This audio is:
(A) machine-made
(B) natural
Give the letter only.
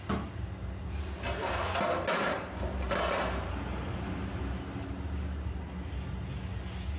B